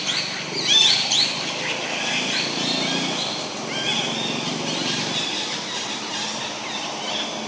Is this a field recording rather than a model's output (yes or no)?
yes